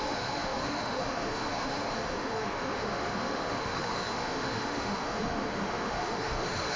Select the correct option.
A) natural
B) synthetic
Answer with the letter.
B